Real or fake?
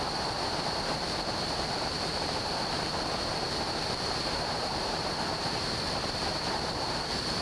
fake